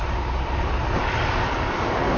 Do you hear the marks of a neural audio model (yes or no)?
no